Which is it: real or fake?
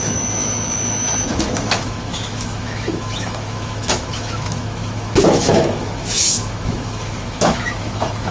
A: fake